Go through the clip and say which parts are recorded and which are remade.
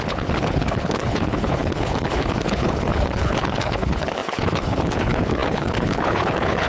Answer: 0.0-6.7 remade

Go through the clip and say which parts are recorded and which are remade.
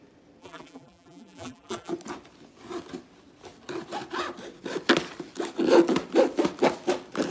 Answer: 0.0-0.4 recorded; 0.4-1.9 remade; 1.9-7.3 recorded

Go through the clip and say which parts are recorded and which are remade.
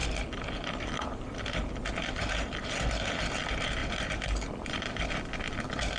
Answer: 0.0-1.2 remade; 1.2-3.8 recorded; 3.8-5.1 remade; 5.1-6.0 recorded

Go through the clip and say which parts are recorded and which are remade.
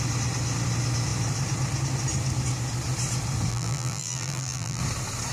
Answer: 0.0-3.5 recorded; 3.5-4.8 remade; 4.8-5.3 recorded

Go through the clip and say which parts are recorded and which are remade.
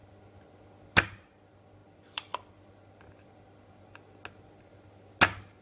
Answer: 0.0-5.6 recorded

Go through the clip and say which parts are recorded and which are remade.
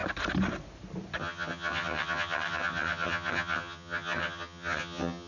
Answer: 0.0-1.2 recorded; 1.2-5.3 remade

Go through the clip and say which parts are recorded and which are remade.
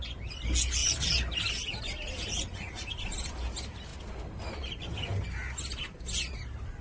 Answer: 0.0-6.8 recorded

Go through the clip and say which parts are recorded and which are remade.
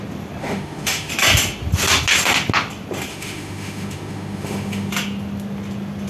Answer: 0.0-0.4 recorded; 0.4-1.1 remade; 1.1-3.1 recorded; 3.1-4.9 remade; 4.9-6.1 recorded